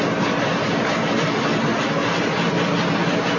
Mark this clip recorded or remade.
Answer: recorded